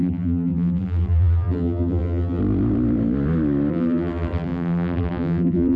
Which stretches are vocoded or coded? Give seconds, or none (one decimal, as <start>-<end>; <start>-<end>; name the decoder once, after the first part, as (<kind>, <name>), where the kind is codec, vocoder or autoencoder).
0.0-2.4 (vocoder, BigVGAN v2); 3.7-5.8